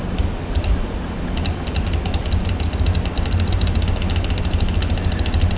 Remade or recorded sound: recorded